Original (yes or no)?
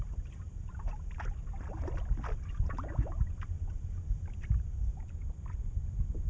yes